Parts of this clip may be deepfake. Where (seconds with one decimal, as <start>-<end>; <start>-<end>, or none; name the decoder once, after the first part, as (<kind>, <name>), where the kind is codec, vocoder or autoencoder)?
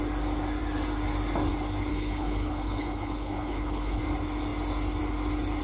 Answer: 1.9-4.0 (codec, HILCodec)